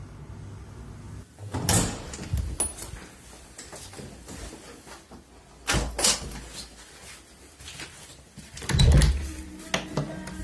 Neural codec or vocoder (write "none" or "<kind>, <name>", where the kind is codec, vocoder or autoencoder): none